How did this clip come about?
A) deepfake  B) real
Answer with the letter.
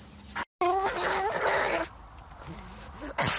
B